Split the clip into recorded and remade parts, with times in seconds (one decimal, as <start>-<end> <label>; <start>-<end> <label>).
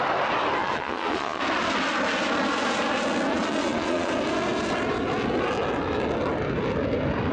0.0-0.6 recorded; 0.6-1.4 remade; 1.4-3.3 recorded; 3.3-4.1 remade; 4.1-7.3 recorded